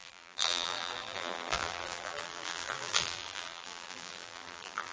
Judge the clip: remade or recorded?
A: remade